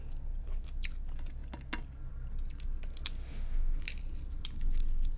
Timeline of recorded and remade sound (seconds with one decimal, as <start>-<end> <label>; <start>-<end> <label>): 0.0-3.2 recorded; 3.2-3.8 remade; 3.8-5.2 recorded

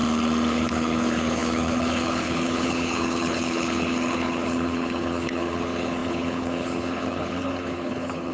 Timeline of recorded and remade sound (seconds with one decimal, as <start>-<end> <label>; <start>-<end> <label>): 0.0-0.5 recorded; 0.5-8.3 remade